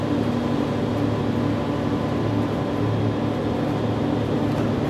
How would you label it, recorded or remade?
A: recorded